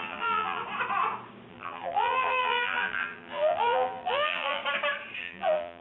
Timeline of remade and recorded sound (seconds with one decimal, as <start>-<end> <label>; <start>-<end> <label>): 0.0-0.6 remade; 0.6-1.5 recorded; 1.5-4.6 remade; 4.6-5.2 recorded; 5.2-5.8 remade